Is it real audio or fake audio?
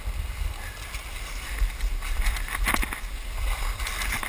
real